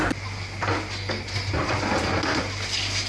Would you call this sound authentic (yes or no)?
yes